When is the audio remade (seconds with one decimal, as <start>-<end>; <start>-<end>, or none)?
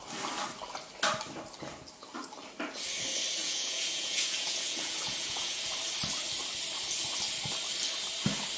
3.4-5.6